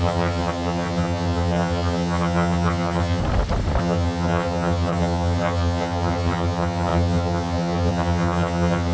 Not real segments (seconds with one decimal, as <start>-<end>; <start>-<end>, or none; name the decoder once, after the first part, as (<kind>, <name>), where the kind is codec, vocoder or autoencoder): 0.0-3.2 (vocoder, HiFi-GAN); 3.8-8.9